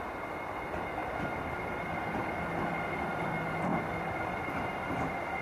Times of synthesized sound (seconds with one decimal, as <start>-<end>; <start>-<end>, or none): 1.0-2.9; 3.7-4.2